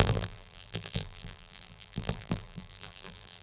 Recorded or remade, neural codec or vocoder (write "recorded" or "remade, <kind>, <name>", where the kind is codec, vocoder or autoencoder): remade, vocoder, BigVGAN v2